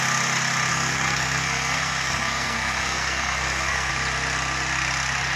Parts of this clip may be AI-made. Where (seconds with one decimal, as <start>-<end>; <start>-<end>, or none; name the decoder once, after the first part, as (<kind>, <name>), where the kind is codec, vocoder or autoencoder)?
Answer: 0.7-3.9 (codec, SNAC)